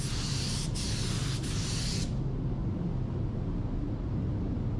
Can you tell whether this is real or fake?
real